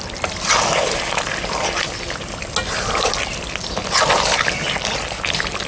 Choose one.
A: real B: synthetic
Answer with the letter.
A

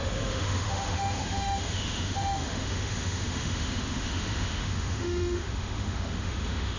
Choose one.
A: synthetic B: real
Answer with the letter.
A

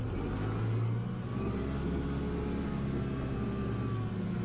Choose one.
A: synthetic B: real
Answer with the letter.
B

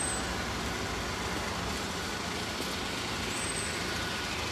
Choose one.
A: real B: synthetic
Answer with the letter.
A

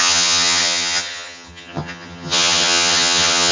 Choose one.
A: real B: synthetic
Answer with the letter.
B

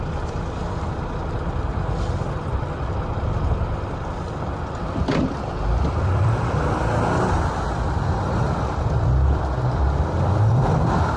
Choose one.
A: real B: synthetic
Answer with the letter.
B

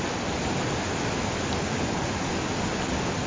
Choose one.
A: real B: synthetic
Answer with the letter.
A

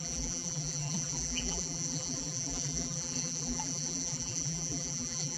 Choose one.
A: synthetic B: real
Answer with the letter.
A